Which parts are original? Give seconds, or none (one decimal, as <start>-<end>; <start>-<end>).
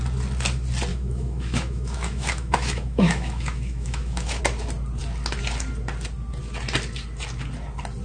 0.0-0.9; 4.4-8.0